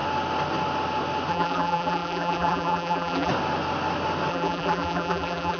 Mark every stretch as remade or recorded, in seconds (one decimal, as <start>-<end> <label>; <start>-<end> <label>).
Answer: 0.0-1.3 recorded; 1.3-3.3 remade; 3.3-4.3 recorded; 4.3-5.6 remade